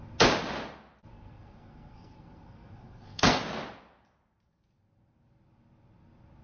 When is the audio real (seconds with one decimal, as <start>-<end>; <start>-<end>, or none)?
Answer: 0.0-1.1; 3.4-6.4